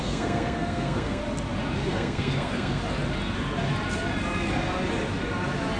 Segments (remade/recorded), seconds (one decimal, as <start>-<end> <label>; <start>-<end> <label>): 0.0-1.2 remade; 1.2-1.9 recorded; 1.9-2.8 remade; 2.8-5.8 recorded